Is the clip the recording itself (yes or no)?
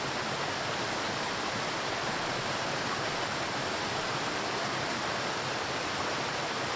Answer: yes